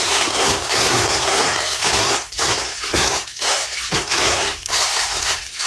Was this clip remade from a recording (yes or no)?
yes